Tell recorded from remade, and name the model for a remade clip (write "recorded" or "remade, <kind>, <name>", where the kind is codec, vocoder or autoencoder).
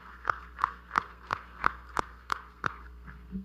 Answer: remade, codec, SNAC